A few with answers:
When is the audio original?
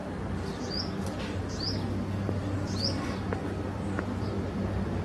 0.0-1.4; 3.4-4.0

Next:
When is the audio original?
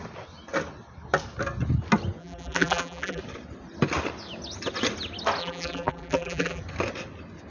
0.0-2.2; 3.2-5.4; 6.6-7.5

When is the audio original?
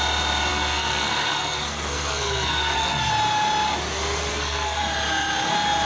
0.0-0.5; 3.1-4.3; 4.8-5.9